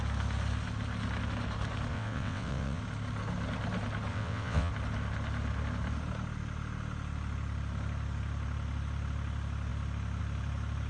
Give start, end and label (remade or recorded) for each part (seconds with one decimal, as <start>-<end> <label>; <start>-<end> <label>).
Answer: 0.0-1.9 recorded; 1.9-2.8 remade; 2.8-4.1 recorded; 4.1-4.7 remade; 4.7-10.9 recorded